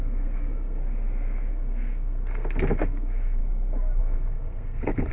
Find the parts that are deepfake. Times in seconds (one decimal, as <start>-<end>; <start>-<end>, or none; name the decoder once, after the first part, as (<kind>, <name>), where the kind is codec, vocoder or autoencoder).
0.0-0.8 (codec, SNAC); 1.5-3.4; 4.0-5.1